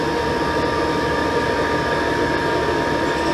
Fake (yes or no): no